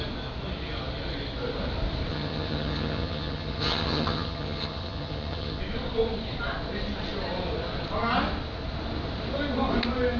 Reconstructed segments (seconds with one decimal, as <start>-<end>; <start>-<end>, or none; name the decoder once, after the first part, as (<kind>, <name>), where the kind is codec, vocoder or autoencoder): 2.1-5.6 (vocoder, HiFi-GAN)

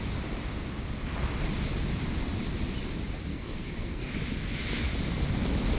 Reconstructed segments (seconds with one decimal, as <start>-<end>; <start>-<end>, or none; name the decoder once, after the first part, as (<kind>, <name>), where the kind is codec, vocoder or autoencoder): 3.3-4.1 (codec, SNAC)

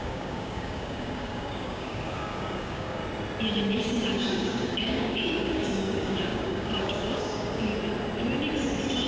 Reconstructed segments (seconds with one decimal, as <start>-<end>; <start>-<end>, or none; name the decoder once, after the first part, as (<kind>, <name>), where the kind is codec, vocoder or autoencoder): 0.0-3.0 (codec, DAC); 3.8-7.7

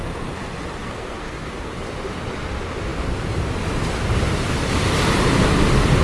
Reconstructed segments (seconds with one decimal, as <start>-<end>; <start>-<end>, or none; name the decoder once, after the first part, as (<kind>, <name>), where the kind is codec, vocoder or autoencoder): 0.8-1.7 (codec, SNAC)